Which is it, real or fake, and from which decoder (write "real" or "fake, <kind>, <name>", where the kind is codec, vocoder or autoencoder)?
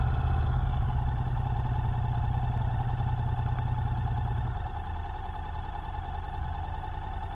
real